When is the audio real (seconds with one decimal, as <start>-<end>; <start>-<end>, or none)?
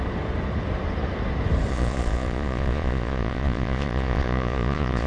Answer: 0.0-1.7